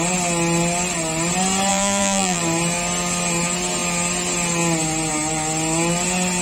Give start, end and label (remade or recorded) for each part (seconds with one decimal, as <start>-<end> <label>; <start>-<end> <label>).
0.0-1.7 recorded; 1.7-2.4 remade; 2.4-6.4 recorded